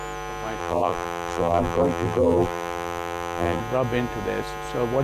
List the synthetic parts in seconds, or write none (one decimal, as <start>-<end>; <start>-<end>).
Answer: 0.6-3.6